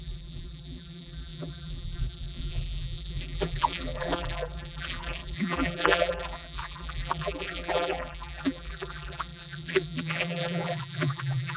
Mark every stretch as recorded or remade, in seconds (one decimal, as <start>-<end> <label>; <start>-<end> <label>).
0.0-11.6 remade